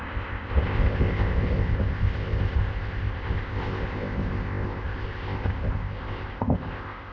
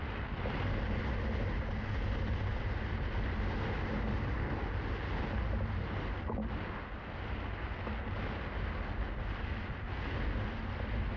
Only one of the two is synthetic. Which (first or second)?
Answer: first